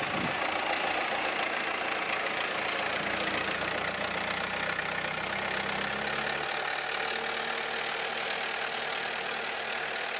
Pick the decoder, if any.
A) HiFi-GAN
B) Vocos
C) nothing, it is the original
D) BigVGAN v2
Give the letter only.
C